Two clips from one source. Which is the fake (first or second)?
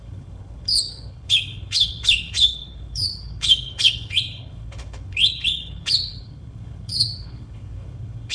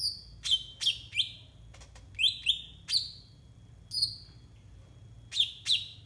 first